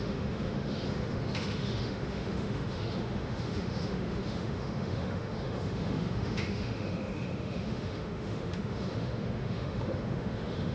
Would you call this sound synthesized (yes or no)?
yes